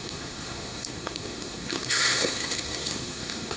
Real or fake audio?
fake